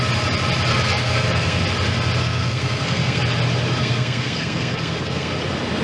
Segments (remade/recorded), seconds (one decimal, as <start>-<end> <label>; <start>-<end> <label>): 0.0-0.7 recorded; 0.7-1.6 remade; 1.6-2.2 recorded; 2.2-3.2 remade; 3.2-3.8 recorded; 3.8-5.3 remade; 5.3-5.8 recorded